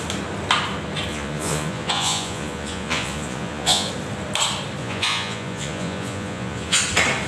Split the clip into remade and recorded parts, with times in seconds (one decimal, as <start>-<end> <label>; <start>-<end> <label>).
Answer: 0.0-1.1 recorded; 1.1-3.9 remade; 3.9-4.8 recorded; 4.8-6.8 remade; 6.8-7.3 recorded